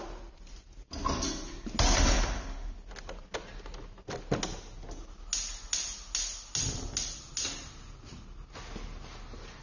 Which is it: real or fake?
real